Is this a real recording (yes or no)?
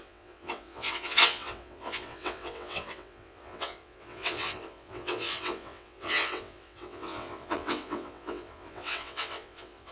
no